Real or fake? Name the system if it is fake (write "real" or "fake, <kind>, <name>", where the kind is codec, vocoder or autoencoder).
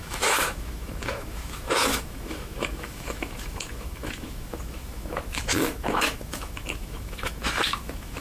fake, autoencoder, DAC-VAE